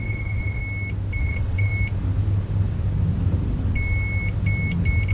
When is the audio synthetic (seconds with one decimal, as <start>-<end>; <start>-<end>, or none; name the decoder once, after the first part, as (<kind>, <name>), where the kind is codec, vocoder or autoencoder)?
0.0-0.6 (vocoder, WaveNeXt); 1.2-1.7